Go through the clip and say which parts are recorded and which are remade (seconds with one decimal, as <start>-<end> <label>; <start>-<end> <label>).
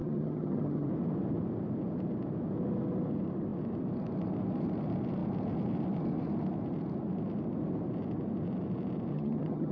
0.0-0.9 remade; 0.9-9.1 recorded; 9.1-9.7 remade